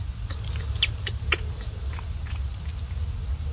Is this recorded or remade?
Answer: recorded